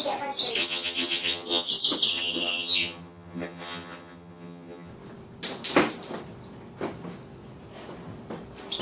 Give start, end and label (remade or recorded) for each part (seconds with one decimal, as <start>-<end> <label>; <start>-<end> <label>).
0.0-0.6 recorded; 0.6-1.7 remade; 1.7-2.1 recorded; 2.1-4.9 remade; 4.9-8.8 recorded